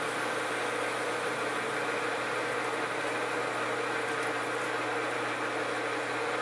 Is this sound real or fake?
real